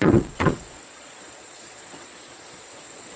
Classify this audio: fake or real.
fake